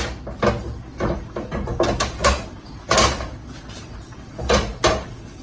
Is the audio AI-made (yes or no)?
no